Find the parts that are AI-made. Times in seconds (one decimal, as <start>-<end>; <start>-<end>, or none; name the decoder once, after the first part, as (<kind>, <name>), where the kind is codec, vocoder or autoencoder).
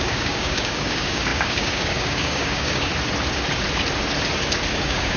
0.0-2.9 (codec, DAC); 4.7-5.2